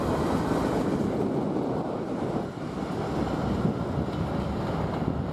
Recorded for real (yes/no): no